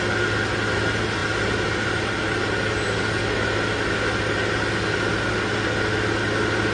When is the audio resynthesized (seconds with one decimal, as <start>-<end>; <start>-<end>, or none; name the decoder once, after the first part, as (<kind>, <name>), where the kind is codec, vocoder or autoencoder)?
none